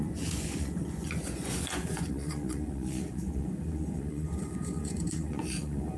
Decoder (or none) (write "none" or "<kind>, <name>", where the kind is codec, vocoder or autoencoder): vocoder, Vocos